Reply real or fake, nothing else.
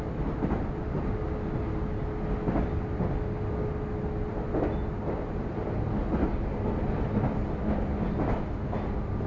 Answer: real